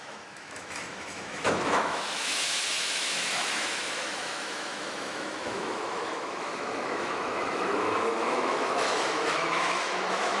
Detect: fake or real fake